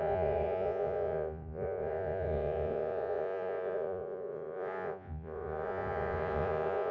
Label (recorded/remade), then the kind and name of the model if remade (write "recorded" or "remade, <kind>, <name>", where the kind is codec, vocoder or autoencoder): remade, vocoder, Vocos